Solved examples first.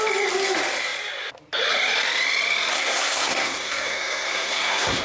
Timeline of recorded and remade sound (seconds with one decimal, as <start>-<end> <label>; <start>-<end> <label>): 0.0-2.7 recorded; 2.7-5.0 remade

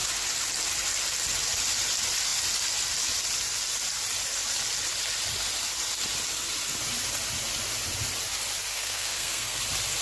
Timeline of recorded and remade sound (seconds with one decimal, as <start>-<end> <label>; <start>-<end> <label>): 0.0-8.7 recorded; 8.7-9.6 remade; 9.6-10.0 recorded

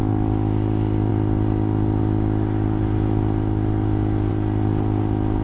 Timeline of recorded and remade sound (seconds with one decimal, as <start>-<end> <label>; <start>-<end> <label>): 0.0-5.4 recorded

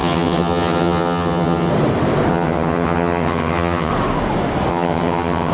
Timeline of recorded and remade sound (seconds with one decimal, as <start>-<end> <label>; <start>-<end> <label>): 0.0-1.7 remade; 1.7-2.3 recorded; 2.3-3.9 remade; 3.9-4.7 recorded; 4.7-5.5 remade